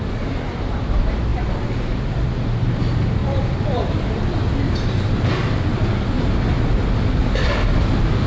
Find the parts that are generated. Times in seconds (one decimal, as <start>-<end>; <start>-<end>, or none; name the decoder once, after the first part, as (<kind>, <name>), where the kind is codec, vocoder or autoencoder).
0.0-8.3 (vocoder, BigVGAN v2)